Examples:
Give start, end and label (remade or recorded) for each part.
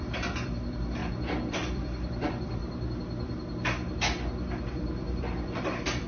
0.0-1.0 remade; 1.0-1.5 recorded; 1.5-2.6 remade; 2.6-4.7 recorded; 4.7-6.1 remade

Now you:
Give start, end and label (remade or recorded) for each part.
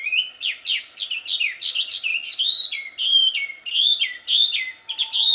0.0-5.3 recorded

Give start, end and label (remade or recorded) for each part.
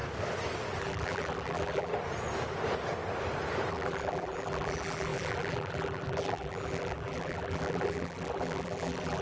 0.0-0.8 recorded; 0.8-1.9 remade; 1.9-3.7 recorded; 3.7-9.2 remade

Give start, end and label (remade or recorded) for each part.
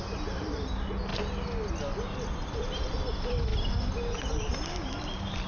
0.0-5.5 recorded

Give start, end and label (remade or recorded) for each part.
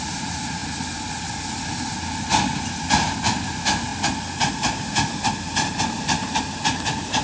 0.0-0.6 remade; 0.6-2.2 recorded; 2.2-3.9 remade; 3.9-4.5 recorded; 4.5-7.2 remade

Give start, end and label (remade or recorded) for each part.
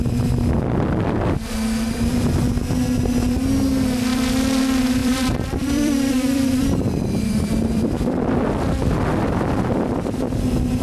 0.0-4.1 recorded; 4.1-4.6 remade; 4.6-5.0 recorded; 5.0-8.3 remade; 8.3-10.8 recorded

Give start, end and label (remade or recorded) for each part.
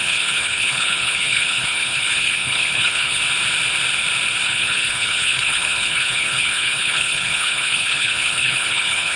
0.0-3.2 remade; 3.2-4.4 recorded; 4.4-9.2 remade